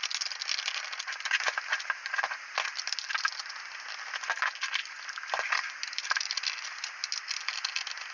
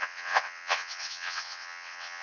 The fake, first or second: second